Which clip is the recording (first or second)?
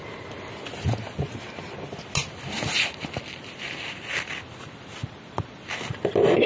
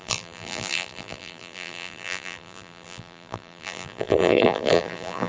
first